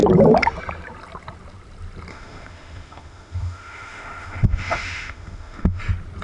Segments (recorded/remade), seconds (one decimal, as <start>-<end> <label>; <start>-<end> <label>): 0.0-2.1 recorded; 2.1-5.8 remade; 5.8-6.2 recorded